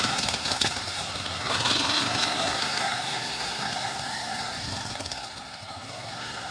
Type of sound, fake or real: fake